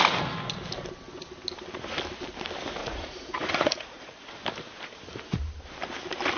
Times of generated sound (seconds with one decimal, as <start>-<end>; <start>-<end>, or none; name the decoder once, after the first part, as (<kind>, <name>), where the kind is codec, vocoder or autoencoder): 2.8-4.3 (vocoder, Vocos)